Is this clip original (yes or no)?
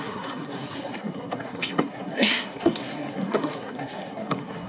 no